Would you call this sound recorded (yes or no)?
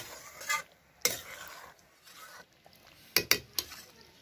yes